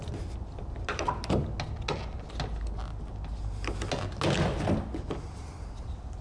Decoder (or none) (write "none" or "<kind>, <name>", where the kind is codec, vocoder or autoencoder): none